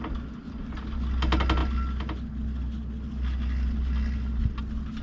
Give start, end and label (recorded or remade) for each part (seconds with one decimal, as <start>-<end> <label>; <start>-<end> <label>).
0.0-5.0 recorded